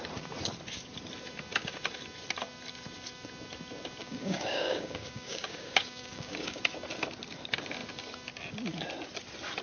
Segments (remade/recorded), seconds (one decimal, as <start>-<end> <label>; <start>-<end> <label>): 0.0-4.0 recorded; 4.0-6.6 remade; 6.6-9.6 recorded